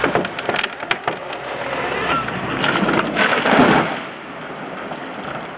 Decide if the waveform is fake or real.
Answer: real